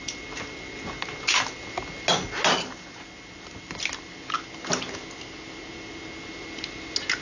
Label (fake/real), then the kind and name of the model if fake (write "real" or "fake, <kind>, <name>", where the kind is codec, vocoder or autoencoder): real